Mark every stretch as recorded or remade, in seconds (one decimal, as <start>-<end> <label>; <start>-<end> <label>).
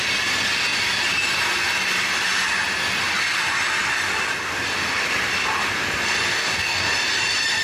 0.0-6.3 recorded; 6.3-6.9 remade; 6.9-7.6 recorded